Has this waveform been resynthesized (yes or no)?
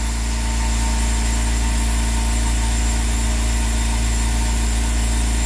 no